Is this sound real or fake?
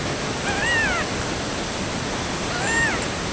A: real